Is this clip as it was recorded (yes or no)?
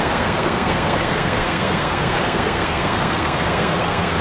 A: no